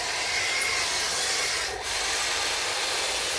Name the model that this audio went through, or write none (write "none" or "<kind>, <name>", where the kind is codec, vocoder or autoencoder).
none